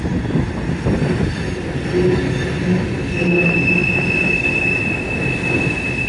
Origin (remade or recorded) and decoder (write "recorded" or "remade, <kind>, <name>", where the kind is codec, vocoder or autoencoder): recorded